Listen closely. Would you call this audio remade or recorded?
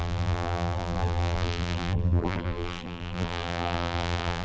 remade